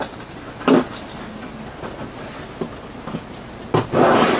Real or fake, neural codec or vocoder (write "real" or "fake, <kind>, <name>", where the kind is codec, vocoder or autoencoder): real